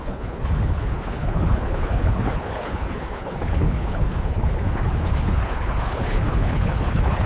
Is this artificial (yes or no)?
yes